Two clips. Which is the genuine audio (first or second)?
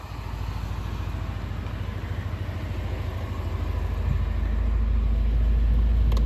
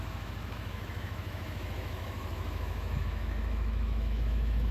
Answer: first